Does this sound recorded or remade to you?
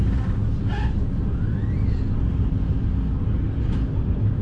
recorded